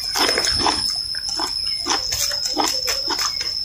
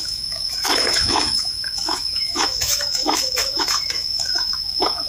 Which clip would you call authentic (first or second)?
first